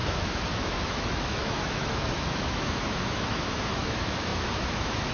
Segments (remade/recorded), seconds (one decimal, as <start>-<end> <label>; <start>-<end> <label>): 0.0-5.1 remade